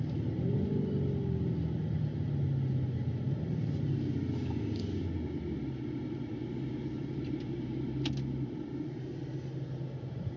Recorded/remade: recorded